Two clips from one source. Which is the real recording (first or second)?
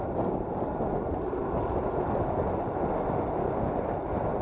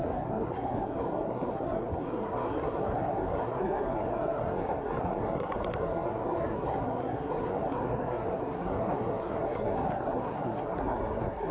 first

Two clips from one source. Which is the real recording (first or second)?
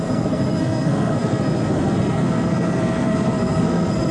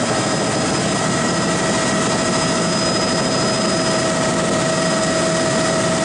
second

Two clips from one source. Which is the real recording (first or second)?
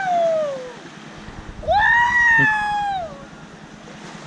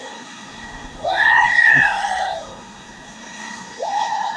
first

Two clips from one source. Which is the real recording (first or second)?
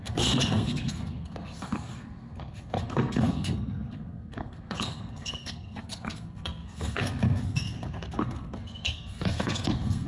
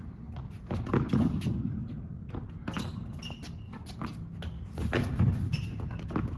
second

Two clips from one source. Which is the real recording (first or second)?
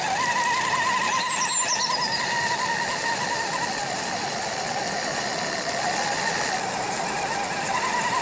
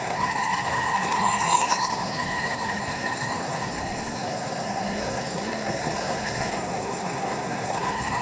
first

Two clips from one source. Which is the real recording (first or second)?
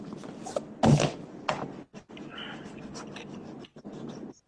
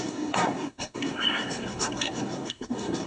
first